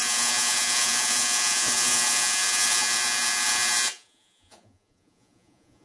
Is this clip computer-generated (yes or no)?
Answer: yes